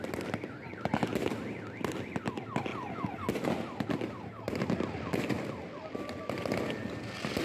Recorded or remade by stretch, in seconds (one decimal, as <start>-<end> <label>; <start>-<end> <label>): 0.0-7.4 recorded